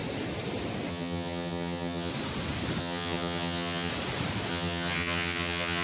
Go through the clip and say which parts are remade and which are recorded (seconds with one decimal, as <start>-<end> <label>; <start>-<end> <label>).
0.0-0.9 recorded; 0.9-2.1 remade; 2.1-2.8 recorded; 2.8-3.9 remade; 3.9-4.5 recorded; 4.5-5.8 remade